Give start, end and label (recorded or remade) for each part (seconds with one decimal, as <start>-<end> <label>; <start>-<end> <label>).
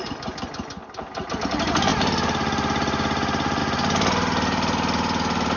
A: 0.0-5.6 recorded